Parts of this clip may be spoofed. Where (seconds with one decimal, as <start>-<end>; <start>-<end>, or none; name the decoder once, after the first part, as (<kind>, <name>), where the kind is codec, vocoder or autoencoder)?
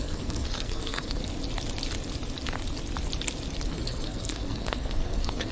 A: 0.0-1.2 (codec, SNAC); 3.7-5.5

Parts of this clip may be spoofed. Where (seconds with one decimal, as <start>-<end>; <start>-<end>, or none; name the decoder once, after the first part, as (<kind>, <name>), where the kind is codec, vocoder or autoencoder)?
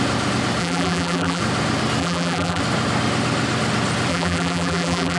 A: 0.6-1.4 (vocoder, BigVGAN v2); 2.0-2.6; 4.1-5.2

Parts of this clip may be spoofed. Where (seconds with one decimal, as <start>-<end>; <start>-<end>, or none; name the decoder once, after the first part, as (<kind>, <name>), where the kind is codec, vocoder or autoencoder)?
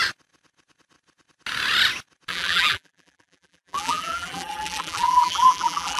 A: 2.3-6.0 (vocoder, BigVGAN v2)